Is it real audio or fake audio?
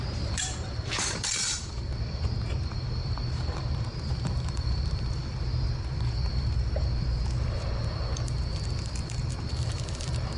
fake